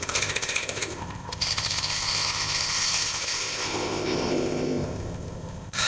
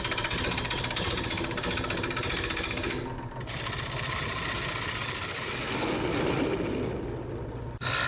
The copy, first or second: first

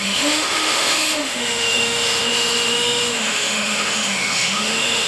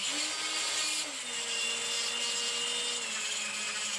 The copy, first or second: first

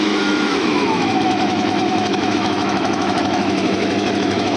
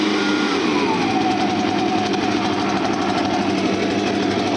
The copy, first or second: first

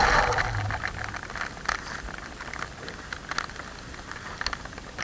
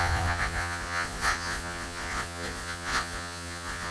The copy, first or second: second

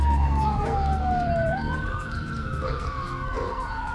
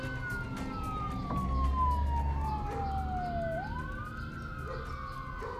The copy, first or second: first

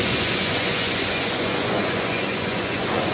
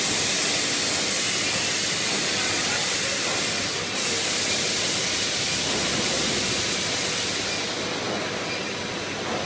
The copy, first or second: first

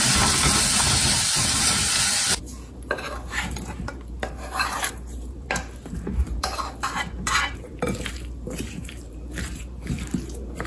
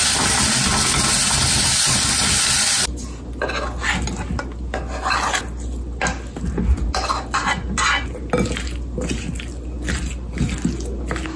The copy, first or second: first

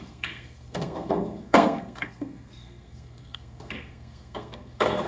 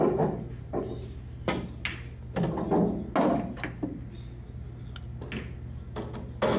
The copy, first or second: first